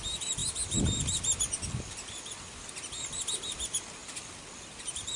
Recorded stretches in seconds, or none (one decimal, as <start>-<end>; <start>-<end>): 0.0-4.0